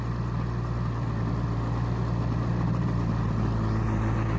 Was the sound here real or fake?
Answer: real